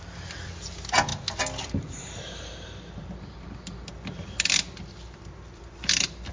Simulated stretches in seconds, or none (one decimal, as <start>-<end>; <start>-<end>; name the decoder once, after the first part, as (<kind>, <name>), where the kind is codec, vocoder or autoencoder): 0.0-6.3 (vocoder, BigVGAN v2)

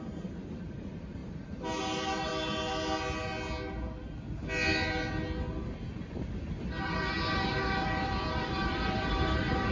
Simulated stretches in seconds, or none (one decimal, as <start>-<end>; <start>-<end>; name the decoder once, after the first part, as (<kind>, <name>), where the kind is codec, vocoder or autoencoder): 0.0-2.3 (vocoder, BigVGAN v2); 6.6-9.7

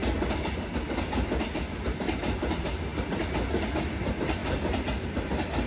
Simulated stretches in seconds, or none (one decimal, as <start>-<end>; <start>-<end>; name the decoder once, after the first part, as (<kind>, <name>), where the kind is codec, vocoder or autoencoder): none

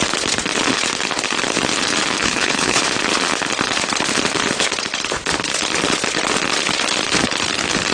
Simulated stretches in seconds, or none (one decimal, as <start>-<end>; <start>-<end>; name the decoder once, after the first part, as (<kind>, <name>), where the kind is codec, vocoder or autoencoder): 2.2-2.8 (codec, HILCodec)

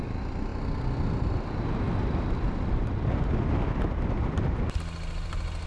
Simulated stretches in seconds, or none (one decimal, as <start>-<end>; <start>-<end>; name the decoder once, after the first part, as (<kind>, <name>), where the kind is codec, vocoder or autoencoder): none

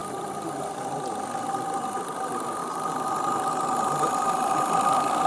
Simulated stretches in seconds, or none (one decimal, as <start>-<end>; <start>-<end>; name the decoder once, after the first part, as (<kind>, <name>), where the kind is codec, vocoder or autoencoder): 0.0-0.8 (vocoder, BigVGAN v2); 2.6-3.5

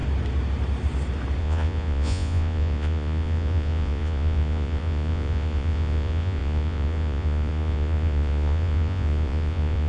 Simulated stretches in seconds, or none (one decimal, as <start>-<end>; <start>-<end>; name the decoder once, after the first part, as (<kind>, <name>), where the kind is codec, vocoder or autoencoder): 1.4-9.9 (vocoder, Vocos)

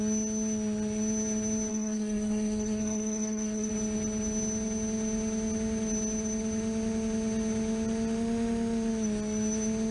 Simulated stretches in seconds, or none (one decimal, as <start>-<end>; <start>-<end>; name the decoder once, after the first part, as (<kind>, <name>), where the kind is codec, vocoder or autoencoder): 1.7-3.7 (codec, SNAC)